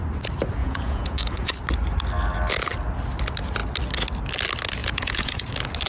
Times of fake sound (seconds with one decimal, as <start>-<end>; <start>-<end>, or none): 0.6-1.5; 4.8-5.5